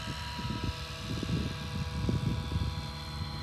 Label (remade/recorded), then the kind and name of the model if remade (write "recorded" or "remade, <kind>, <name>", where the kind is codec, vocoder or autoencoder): recorded